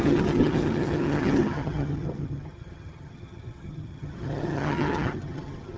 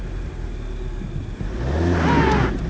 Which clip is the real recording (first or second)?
second